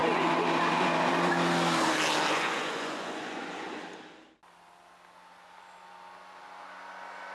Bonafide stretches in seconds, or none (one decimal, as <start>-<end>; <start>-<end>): 1.3-2.3; 3.8-7.3